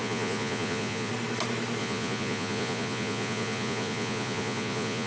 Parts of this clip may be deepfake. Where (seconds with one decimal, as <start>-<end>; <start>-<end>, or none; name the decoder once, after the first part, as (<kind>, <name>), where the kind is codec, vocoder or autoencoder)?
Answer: 0.0-1.1 (vocoder, Vocos); 1.8-5.1